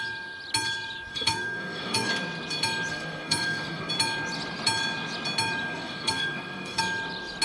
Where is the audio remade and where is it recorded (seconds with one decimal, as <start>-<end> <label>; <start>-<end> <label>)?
0.0-1.1 recorded; 1.1-2.1 remade; 2.1-2.9 recorded; 2.9-3.9 remade; 3.9-5.6 recorded; 5.6-6.8 remade; 6.8-7.4 recorded